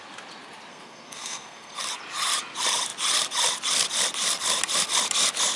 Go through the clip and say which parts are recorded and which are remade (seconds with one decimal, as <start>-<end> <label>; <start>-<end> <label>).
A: 0.0-0.7 recorded; 0.7-1.8 remade; 1.8-5.6 recorded